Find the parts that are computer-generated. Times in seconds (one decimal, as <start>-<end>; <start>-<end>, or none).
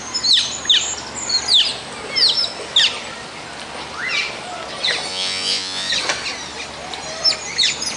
5.1-5.9